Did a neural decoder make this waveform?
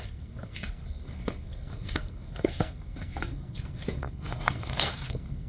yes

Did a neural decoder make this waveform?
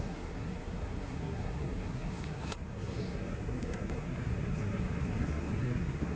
yes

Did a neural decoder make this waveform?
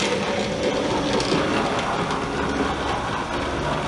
no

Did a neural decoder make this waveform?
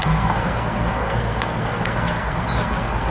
yes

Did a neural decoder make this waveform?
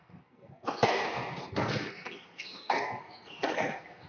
yes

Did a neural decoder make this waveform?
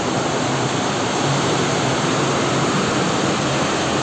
no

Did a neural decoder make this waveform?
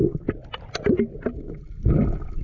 no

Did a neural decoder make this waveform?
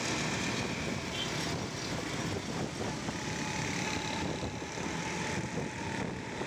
no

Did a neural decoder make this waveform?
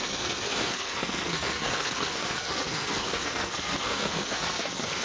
yes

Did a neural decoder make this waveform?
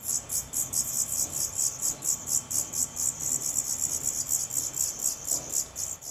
no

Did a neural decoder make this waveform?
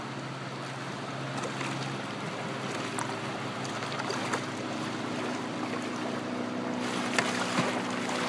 no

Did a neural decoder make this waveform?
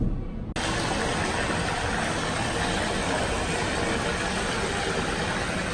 no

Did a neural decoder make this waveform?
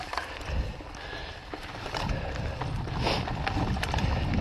no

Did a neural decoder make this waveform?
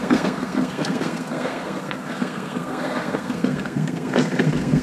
yes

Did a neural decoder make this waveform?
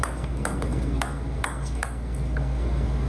yes